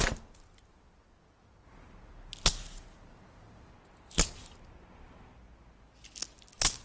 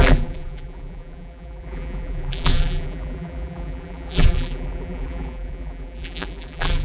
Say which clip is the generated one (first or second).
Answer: second